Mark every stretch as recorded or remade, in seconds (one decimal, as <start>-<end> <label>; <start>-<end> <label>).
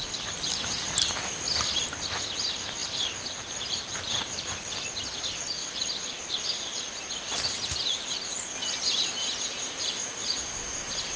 0.0-2.8 recorded; 2.8-4.5 remade; 4.5-5.6 recorded; 5.6-6.4 remade; 6.4-8.6 recorded; 8.6-10.4 remade; 10.4-11.2 recorded